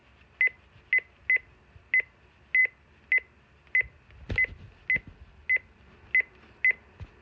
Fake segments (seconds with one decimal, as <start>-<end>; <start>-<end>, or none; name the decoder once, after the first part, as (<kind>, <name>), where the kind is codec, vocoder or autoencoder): none